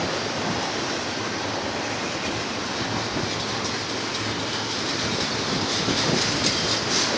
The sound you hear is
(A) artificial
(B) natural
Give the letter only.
B